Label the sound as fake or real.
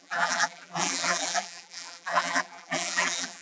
fake